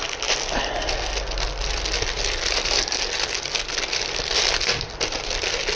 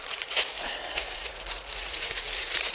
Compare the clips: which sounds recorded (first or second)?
first